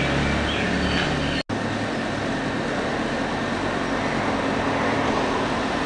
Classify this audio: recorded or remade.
recorded